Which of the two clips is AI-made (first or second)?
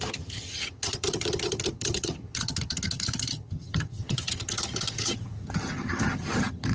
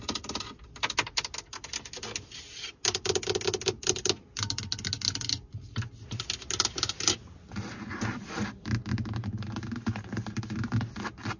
first